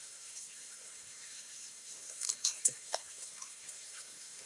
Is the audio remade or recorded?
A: remade